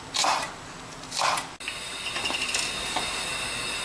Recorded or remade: recorded